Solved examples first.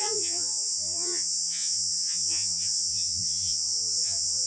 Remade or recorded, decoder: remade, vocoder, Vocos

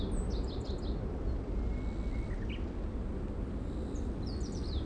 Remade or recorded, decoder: recorded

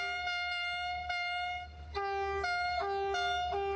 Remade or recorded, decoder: recorded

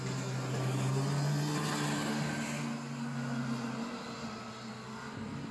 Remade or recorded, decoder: recorded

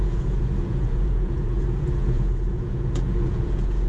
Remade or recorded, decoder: remade, vocoder, Vocos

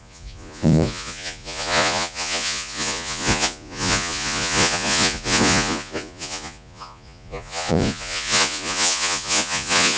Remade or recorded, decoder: remade, vocoder, Vocos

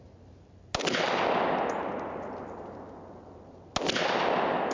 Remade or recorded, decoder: recorded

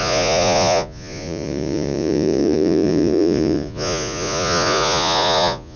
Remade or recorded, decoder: remade, vocoder, Vocos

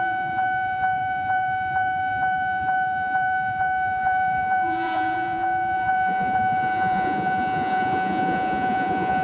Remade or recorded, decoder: remade, vocoder, Vocos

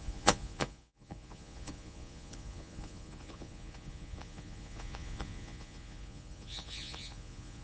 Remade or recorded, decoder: remade, vocoder, Vocos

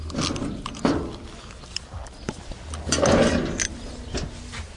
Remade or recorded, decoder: recorded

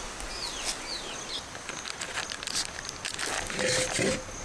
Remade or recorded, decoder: recorded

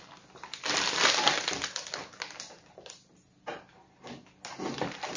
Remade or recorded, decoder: recorded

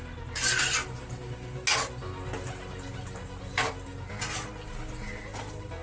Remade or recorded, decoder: recorded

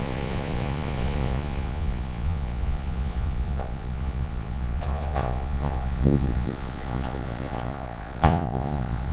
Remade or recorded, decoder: remade, vocoder, Vocos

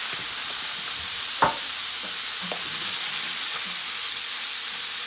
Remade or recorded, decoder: recorded